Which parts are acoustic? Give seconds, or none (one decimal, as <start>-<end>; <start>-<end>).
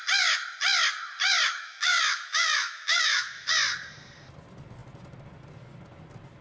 0.0-1.5; 3.5-6.4